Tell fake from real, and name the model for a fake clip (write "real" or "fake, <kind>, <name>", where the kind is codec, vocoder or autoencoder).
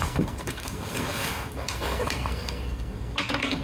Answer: fake, codec, SNAC